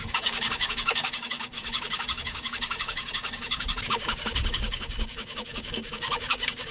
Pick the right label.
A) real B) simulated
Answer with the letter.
B